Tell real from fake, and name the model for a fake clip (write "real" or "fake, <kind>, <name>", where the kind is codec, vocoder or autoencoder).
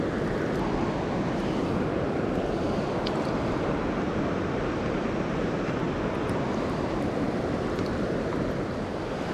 real